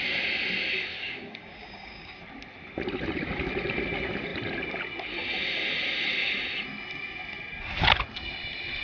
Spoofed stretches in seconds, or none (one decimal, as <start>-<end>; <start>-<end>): 0.9-2.2